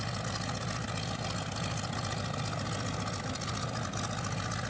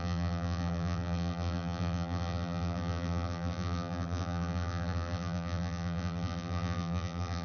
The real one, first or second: first